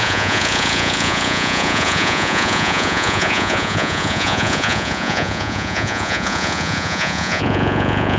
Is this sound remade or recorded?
remade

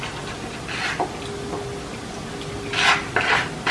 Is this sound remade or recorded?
recorded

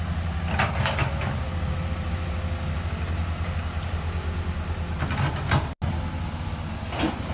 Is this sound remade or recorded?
recorded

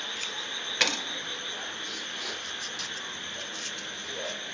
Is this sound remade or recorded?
recorded